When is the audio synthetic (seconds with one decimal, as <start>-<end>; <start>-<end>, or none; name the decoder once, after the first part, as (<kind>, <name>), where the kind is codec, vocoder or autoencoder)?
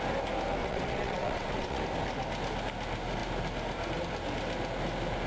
0.6-1.8 (vocoder, WaveNeXt)